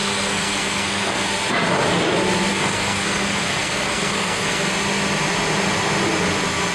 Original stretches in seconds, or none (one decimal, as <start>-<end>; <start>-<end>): 1.3-2.5; 4.7-6.7

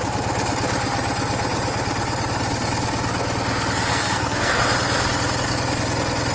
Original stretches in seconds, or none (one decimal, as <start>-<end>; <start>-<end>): 0.0-3.9; 4.6-6.3